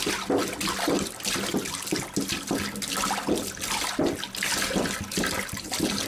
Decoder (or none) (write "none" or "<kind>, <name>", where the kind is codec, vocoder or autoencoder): none